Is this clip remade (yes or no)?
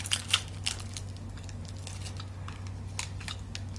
no